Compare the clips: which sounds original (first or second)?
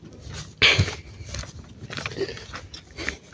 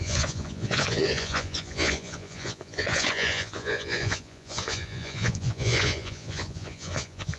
first